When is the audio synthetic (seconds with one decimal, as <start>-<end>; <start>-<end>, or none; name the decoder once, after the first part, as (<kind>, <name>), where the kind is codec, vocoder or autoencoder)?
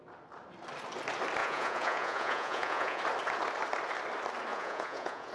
1.4-3.0 (vocoder, Vocos); 4.5-5.3